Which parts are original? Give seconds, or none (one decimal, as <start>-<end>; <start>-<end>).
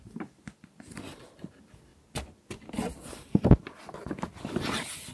0.0-5.1